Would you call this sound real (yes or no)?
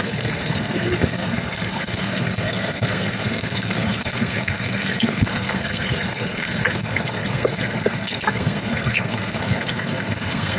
no